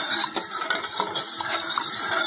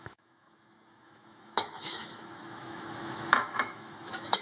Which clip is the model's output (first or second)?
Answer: second